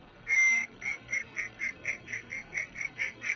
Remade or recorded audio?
remade